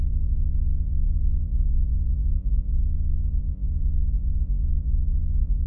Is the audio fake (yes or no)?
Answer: yes